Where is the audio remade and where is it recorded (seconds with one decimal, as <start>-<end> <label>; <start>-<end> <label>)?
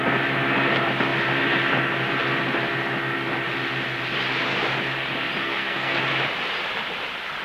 0.0-5.4 recorded; 5.4-6.0 remade; 6.0-7.4 recorded